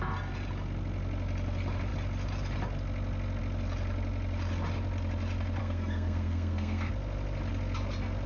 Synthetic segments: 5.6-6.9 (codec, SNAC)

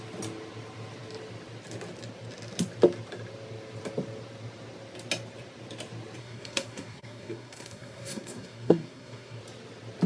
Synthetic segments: 6.2-9.4 (codec, SNAC)

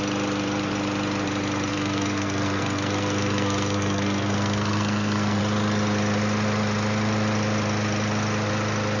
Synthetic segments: 1.7-5.4 (codec, SNAC)

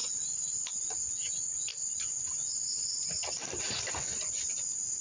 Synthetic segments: none

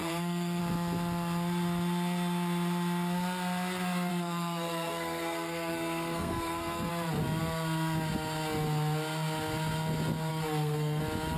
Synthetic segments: 0.0-0.6 (codec, SNAC); 4.1-6.9; 10.3-11.0

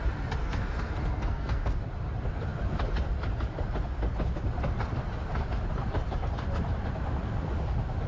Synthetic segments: 0.4-1.8 (codec, SNAC)

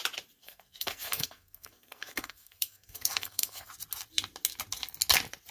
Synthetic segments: 0.4-3.7 (codec, SNAC)

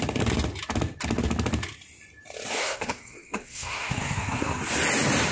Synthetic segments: 2.6-4.6 (codec, SNAC)